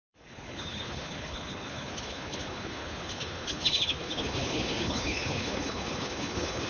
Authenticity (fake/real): fake